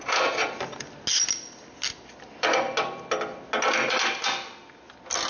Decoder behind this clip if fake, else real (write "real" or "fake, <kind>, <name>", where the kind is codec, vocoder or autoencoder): real